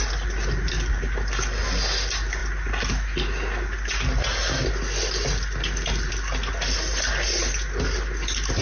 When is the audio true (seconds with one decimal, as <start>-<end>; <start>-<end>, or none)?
0.0-8.6